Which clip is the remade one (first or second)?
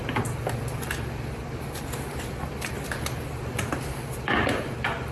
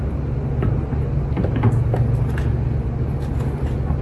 first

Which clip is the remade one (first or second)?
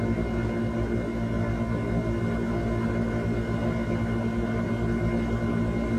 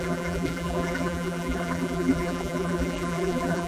second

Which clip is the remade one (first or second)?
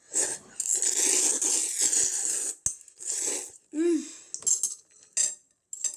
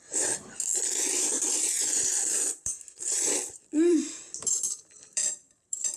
second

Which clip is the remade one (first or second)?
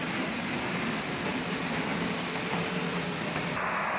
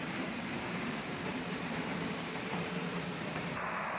second